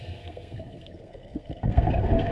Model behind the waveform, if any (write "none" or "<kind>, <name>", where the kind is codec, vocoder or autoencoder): codec, SNAC